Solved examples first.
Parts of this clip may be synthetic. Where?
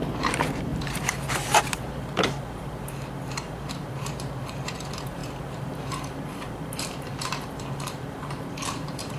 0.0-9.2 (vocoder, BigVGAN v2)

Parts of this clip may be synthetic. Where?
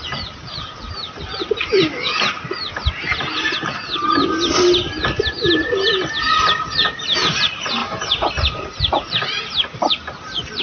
0.0-1.0 (vocoder, BigVGAN v2); 6.0-10.6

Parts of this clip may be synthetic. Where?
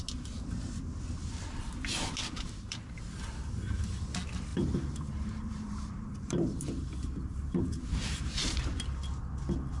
2.2-3.0 (vocoder, BigVGAN v2); 4.5-8.6